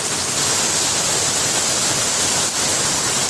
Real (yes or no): yes